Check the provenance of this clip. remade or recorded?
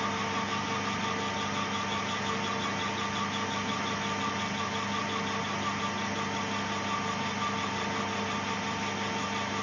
recorded